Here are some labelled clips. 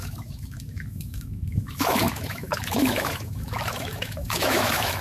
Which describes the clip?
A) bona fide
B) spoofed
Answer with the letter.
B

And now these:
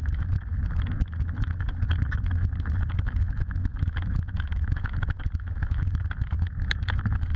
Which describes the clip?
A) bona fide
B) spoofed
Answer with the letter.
B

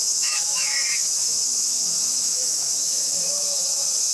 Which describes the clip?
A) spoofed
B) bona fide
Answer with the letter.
A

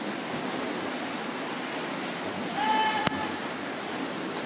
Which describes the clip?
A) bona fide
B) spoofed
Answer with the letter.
A